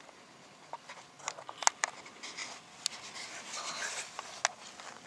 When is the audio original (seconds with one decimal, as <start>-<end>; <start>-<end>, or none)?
0.0-5.1